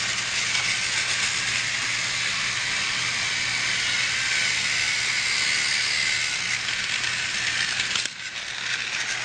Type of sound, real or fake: real